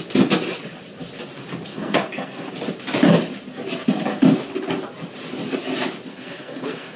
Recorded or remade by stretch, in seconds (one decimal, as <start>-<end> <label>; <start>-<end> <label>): 0.0-1.7 recorded; 1.7-2.5 remade; 2.5-6.1 recorded; 6.1-7.0 remade